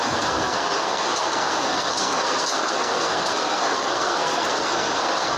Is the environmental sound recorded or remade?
remade